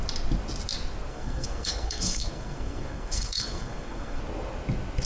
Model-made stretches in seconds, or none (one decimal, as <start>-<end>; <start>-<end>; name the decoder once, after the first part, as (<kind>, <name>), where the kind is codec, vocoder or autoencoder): 1.1-4.2 (codec, SNAC)